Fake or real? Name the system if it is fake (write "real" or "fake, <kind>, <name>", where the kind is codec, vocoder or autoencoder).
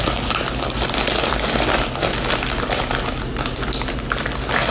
real